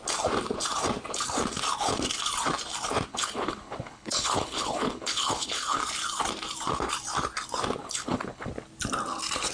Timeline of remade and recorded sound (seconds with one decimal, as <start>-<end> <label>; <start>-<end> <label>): 0.0-3.1 recorded; 3.1-5.8 remade; 5.8-7.8 recorded; 7.8-8.5 remade; 8.5-9.5 recorded